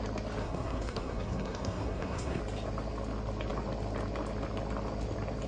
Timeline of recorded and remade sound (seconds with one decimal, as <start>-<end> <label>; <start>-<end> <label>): 0.0-0.4 recorded; 0.4-2.4 remade; 2.4-5.5 recorded